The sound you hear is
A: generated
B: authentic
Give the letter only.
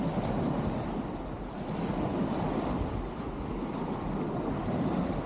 B